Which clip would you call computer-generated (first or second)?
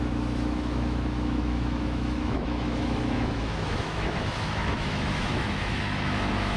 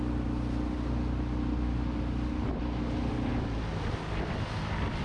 first